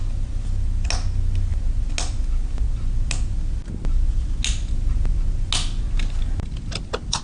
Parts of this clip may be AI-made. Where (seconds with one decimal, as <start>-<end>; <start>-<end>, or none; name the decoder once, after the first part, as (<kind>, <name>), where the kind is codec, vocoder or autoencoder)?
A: none

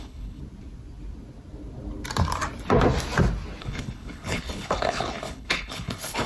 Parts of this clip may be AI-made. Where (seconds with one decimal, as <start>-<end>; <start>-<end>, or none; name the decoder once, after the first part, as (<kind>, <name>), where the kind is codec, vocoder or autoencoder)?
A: 0.0-0.4 (codec, HILCodec); 3.6-6.3

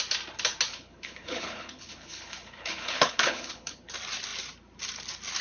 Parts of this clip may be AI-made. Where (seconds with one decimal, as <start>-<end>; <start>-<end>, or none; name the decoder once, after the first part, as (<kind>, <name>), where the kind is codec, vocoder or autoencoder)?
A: 0.7-3.9 (codec, HILCodec)

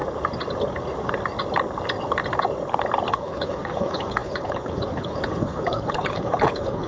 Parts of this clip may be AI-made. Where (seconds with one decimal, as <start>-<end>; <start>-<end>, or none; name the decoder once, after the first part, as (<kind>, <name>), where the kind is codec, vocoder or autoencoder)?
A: 3.1-6.9 (codec, HILCodec)

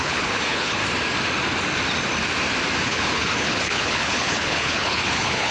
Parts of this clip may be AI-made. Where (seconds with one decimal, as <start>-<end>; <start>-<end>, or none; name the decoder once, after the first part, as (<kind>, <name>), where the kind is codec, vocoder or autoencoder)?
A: 0.0-0.8 (codec, HILCodec); 2.8-5.5

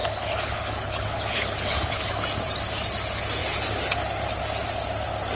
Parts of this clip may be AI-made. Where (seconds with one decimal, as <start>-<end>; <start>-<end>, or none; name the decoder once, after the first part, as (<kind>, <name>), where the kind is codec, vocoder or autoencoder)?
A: 0.0-2.1 (codec, HILCodec)